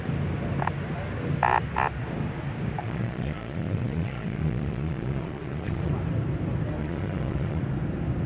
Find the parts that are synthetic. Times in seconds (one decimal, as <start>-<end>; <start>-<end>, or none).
2.8-5.9; 6.8-7.6